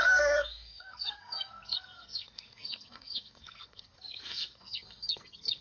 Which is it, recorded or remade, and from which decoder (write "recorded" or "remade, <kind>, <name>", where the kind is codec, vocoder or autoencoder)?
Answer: remade, codec, SNAC